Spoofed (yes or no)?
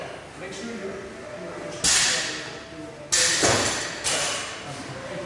no